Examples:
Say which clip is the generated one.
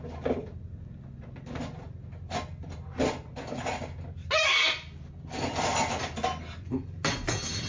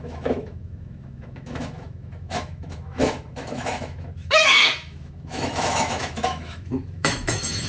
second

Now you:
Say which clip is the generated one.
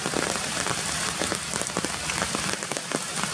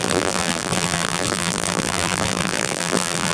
second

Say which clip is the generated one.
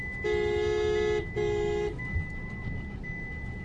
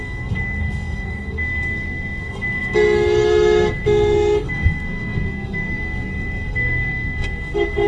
second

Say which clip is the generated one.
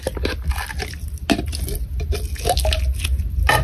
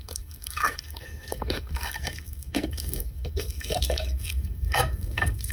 second